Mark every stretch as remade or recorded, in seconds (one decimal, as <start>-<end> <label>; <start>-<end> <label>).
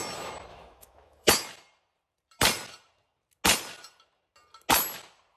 0.0-0.5 recorded; 0.5-1.3 remade; 1.3-5.4 recorded